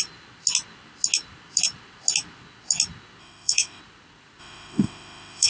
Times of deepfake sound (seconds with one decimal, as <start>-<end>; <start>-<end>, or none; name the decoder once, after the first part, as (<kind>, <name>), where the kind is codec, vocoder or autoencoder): 3.2-3.8 (autoencoder, DAC-VAE); 4.4-5.5